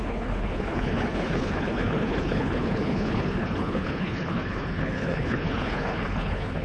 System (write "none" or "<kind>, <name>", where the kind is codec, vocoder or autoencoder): codec, HILCodec